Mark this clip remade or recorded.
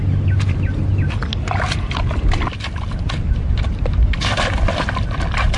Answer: recorded